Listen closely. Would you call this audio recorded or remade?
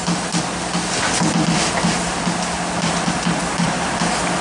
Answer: recorded